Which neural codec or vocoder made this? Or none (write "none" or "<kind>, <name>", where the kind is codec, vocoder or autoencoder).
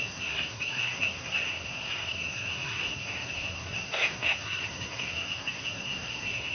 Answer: codec, SNAC